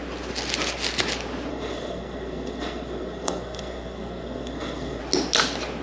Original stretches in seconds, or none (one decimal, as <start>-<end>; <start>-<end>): 0.0-1.5; 5.0-5.8